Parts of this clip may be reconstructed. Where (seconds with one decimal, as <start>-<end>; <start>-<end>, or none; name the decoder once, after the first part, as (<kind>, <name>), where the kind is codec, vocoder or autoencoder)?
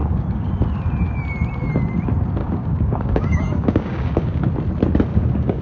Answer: 0.0-0.5 (codec, DAC); 2.4-4.4; 5.1-5.6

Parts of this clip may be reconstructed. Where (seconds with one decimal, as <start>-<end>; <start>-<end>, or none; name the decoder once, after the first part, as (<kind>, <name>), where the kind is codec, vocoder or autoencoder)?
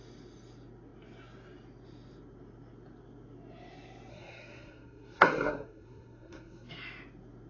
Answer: 4.1-6.7 (codec, SNAC)